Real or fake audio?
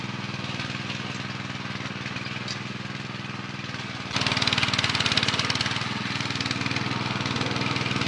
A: real